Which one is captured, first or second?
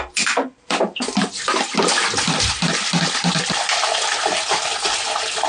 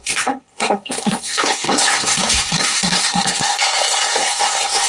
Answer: first